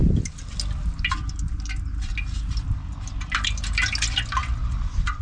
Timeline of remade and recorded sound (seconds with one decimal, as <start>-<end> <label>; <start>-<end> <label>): 0.0-5.2 recorded